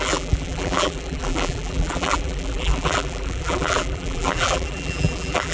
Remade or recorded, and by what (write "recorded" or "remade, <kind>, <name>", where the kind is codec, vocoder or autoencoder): remade, vocoder, BigVGAN v2